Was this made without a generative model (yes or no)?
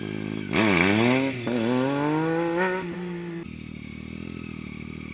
yes